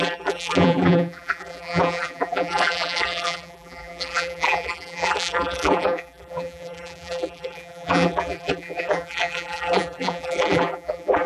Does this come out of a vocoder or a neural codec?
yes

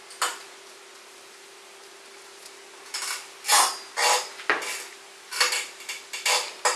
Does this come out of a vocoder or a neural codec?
no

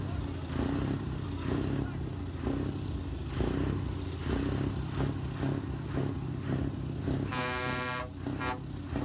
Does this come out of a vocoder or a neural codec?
no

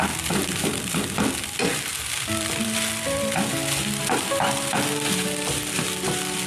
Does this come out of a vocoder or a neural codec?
yes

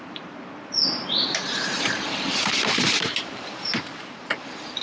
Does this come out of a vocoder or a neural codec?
yes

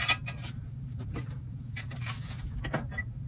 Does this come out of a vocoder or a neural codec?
yes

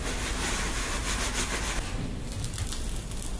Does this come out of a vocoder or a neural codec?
no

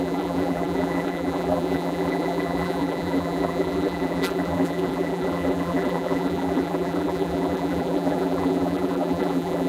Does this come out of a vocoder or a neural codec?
yes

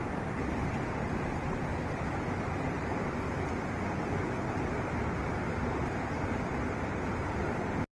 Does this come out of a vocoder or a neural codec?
no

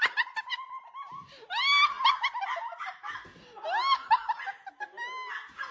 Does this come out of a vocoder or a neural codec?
no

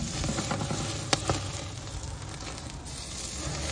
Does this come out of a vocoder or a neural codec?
no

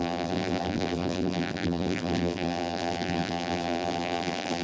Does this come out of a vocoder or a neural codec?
yes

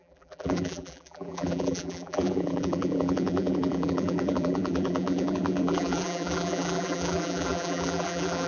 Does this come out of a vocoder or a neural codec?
yes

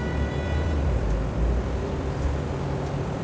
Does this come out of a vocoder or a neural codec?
yes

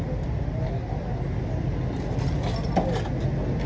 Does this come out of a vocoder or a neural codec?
no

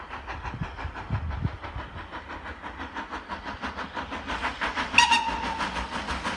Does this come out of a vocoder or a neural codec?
no